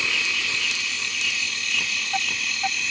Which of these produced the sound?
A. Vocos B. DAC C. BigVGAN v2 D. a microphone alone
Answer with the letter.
D